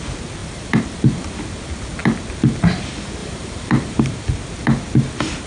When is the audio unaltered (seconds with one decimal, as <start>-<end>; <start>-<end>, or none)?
0.0-0.4; 1.4-3.2; 4.0-5.5